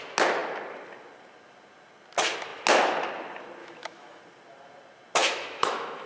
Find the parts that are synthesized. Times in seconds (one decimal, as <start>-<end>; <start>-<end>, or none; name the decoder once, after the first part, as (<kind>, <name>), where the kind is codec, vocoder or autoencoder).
3.6-4.2 (autoencoder, DAC-VAE); 5.2-6.1